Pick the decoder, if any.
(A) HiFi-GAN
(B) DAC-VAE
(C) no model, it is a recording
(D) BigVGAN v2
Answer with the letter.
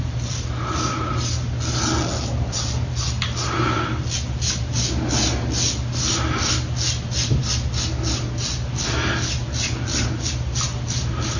C